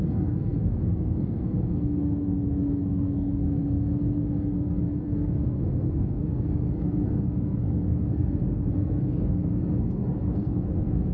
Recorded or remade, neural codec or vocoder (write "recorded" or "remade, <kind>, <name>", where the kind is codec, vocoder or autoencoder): remade, codec, SNAC